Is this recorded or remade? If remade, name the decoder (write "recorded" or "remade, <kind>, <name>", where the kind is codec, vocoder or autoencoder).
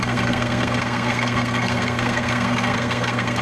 remade, codec, SNAC